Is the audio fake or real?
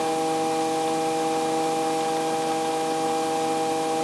real